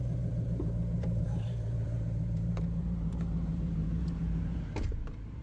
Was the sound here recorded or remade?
remade